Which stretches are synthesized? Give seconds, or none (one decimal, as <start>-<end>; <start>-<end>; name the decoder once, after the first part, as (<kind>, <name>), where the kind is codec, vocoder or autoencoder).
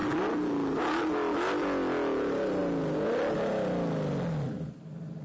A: none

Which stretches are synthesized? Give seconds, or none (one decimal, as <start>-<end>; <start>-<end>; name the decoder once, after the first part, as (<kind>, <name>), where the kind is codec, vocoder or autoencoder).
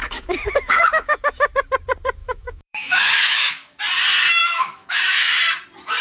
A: 0.0-1.5 (autoencoder, DAC-VAE); 2.2-3.8; 4.4-5.4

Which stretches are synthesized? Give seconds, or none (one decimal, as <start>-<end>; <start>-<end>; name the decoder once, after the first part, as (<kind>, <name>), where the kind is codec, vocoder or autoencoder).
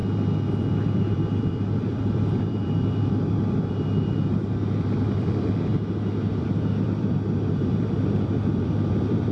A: 0.6-5.7 (vocoder, BigVGAN v2); 6.4-9.3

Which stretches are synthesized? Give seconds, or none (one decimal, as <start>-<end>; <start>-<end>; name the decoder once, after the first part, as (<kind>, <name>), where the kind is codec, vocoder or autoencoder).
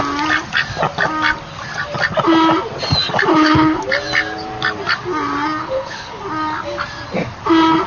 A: 3.3-3.8 (codec, HILCodec); 5.6-6.2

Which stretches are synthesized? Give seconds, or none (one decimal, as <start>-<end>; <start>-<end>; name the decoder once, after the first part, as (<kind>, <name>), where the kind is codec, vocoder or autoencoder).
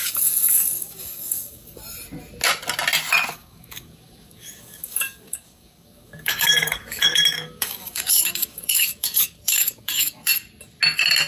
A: 0.0-1.8 (codec, DAC); 3.3-10.3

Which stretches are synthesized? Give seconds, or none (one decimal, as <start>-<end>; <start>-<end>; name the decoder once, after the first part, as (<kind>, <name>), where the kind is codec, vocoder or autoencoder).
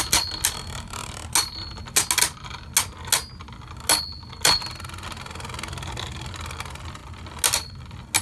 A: none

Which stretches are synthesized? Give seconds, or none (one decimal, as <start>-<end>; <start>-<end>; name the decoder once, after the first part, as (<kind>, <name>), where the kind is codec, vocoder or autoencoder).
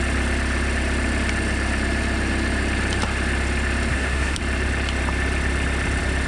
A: 3.9-4.4 (codec, SNAC)